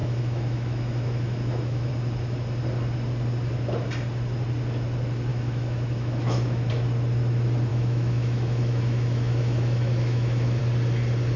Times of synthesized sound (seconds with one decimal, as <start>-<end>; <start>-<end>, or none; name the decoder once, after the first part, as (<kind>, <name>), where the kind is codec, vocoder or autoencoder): 0.0-1.9 (autoencoder, DAC-VAE); 5.3-6.7; 7.7-10.6